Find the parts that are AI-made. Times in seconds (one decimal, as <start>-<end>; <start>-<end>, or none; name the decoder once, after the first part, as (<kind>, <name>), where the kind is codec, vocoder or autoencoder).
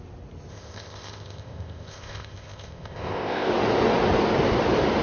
0.5-3.5 (codec, ZipCodec)